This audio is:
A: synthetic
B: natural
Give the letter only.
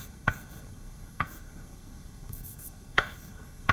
A